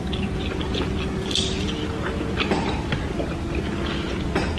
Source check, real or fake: real